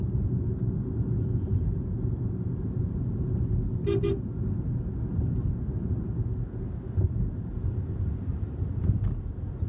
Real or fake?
real